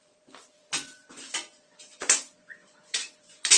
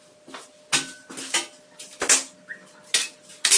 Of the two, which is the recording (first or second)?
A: second